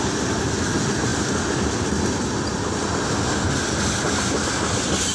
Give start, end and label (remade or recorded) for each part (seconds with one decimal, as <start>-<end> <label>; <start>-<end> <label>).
0.0-1.1 recorded; 1.1-1.8 remade; 1.8-2.5 recorded; 2.5-4.0 remade; 4.0-5.1 recorded